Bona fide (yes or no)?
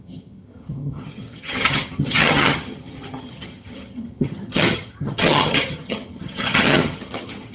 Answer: no